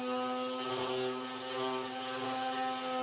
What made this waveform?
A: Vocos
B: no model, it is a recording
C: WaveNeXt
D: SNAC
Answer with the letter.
B